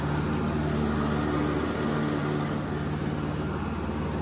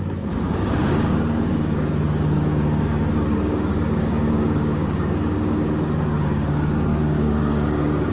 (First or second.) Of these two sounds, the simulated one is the second